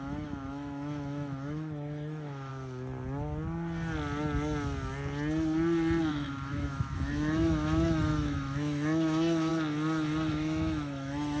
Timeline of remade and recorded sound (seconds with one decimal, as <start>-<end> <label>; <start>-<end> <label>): 0.0-2.5 remade; 2.5-6.1 recorded; 6.1-9.5 remade; 9.5-10.3 recorded; 10.3-11.4 remade